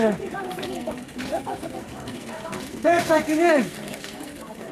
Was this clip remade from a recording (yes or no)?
yes